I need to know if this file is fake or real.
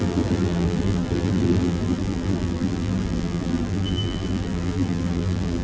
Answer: fake